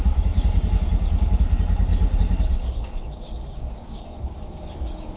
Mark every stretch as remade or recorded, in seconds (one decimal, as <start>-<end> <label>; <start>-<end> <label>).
0.0-0.7 remade; 0.7-1.9 recorded; 1.9-5.2 remade